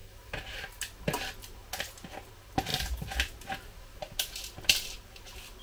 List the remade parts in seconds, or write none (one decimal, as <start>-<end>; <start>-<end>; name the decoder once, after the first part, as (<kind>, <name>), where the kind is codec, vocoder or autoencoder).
none